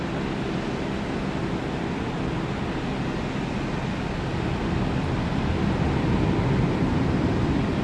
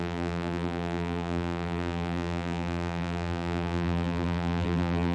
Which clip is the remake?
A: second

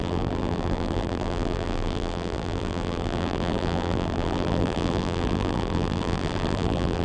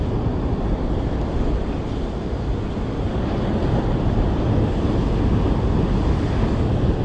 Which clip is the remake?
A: first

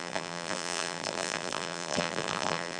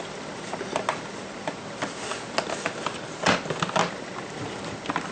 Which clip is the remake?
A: first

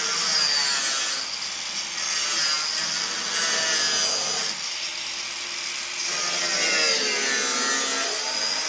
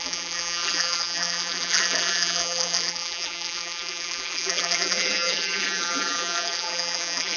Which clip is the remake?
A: second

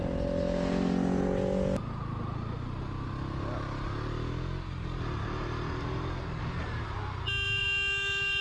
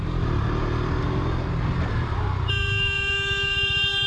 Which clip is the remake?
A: second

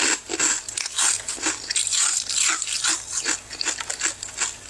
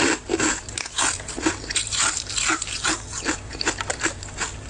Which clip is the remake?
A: second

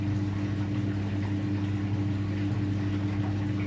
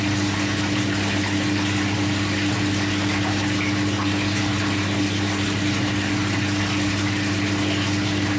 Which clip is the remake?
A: second